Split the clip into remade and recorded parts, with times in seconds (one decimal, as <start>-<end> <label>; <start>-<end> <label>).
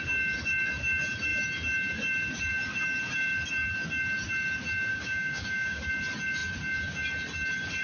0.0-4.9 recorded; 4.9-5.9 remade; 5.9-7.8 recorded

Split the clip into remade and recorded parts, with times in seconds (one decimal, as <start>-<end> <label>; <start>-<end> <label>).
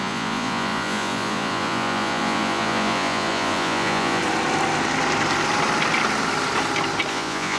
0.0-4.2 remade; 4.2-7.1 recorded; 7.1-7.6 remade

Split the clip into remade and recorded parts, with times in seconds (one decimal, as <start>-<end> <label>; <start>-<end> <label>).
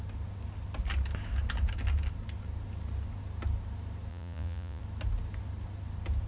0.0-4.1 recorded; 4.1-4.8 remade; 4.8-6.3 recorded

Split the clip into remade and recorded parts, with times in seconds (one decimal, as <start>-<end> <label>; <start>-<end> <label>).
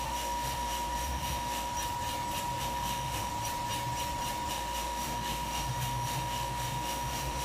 0.0-1.7 remade; 1.7-2.6 recorded; 2.6-3.3 remade; 3.3-4.5 recorded; 4.5-7.4 remade